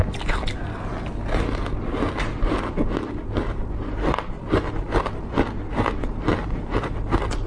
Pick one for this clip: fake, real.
real